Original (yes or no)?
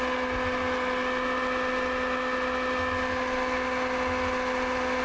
yes